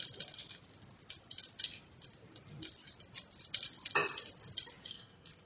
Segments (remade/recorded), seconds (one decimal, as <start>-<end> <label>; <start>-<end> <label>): 0.0-4.9 recorded; 4.9-5.5 remade